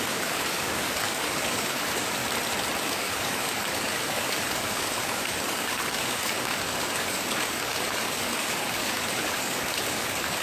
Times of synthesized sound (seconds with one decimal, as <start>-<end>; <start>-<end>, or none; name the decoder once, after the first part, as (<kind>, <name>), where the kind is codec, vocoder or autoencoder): 0.0-2.2 (codec, DAC); 2.8-10.4